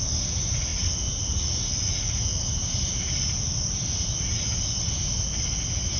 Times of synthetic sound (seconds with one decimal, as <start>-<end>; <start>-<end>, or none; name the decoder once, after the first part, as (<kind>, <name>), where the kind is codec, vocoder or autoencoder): none

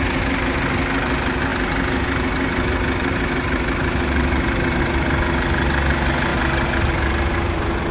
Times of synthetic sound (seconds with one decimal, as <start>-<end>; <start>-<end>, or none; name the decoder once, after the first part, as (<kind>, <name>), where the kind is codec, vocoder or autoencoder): none

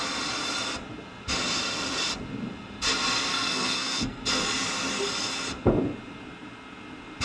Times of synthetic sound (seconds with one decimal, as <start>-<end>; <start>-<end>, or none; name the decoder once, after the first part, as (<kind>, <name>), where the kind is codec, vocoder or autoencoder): 3.3-4.2 (codec, SNAC)

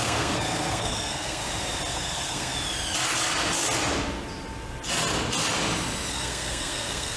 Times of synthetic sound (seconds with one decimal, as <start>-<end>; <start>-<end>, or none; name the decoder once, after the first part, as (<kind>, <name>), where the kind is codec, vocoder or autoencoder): 0.0-1.4 (codec, SNAC); 1.9-2.5; 6.1-7.2

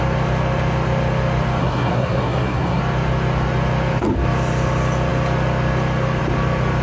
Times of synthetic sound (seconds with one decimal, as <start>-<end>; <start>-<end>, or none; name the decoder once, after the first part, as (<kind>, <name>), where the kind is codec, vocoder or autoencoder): 1.6-2.8 (codec, SNAC)

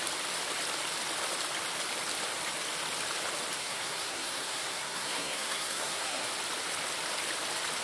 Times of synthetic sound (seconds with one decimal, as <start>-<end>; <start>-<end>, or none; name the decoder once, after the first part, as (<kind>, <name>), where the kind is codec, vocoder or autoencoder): 3.6-6.3 (codec, SNAC)